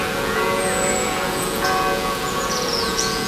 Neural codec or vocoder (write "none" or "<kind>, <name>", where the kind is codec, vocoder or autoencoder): vocoder, Vocos